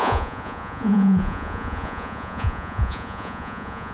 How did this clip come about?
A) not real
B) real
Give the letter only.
A